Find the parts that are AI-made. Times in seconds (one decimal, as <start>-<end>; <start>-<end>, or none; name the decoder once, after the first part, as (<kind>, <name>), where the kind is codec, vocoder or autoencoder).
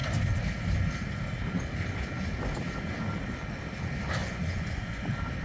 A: 4.2-5.0 (vocoder, Vocos)